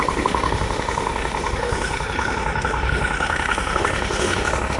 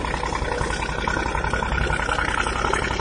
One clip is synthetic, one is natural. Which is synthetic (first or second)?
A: first